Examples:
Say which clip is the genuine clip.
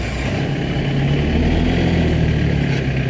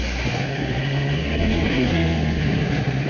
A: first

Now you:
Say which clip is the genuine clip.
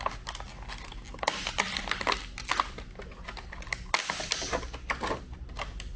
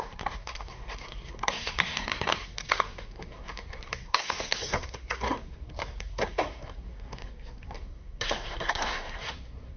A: first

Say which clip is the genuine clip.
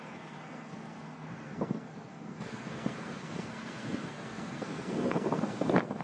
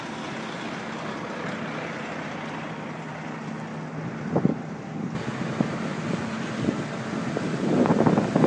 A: second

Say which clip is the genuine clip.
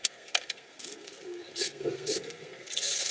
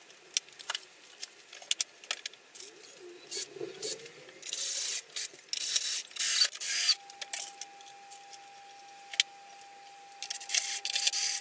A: second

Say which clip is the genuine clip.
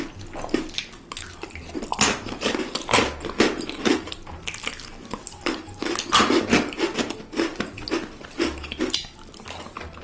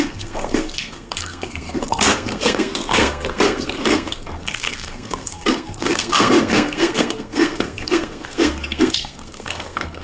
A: first